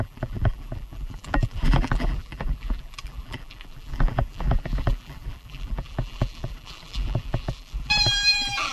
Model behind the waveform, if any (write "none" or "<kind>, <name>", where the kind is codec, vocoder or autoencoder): vocoder, BigVGAN v2